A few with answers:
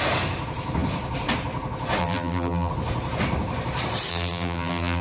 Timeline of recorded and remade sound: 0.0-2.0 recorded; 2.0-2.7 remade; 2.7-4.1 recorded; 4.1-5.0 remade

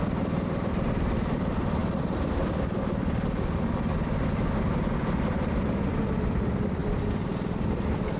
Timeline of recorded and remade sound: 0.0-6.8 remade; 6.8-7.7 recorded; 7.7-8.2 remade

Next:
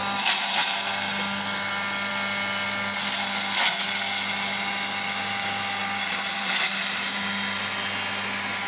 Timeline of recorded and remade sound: 0.0-5.8 recorded; 5.8-7.6 remade; 7.6-8.7 recorded